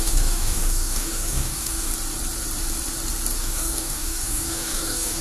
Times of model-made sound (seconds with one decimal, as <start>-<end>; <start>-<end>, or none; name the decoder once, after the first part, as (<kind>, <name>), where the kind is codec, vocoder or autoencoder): 0.0-1.9 (codec, DAC); 3.4-5.2